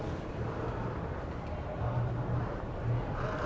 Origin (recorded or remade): remade